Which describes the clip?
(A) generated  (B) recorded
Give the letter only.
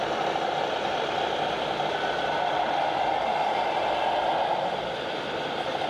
B